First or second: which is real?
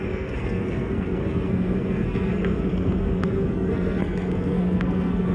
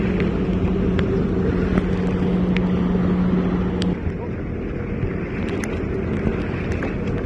second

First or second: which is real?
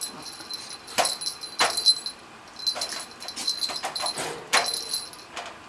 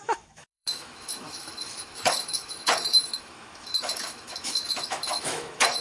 first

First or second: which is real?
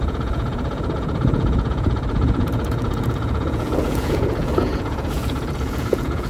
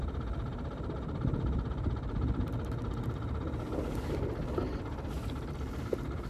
second